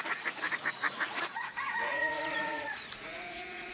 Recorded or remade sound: remade